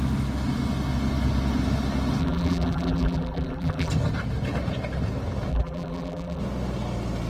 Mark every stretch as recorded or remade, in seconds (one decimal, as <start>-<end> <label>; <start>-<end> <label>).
0.0-2.2 recorded; 2.2-3.9 remade; 3.9-5.5 recorded; 5.5-6.4 remade; 6.4-7.3 recorded